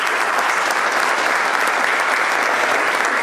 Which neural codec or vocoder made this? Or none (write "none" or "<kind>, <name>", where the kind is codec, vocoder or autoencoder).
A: none